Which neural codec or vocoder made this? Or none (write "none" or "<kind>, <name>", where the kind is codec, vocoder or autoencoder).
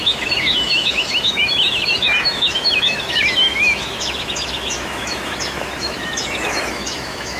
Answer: autoencoder, DAC-VAE